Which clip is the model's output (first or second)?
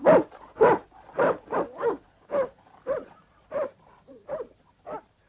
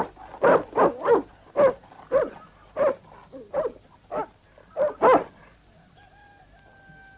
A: first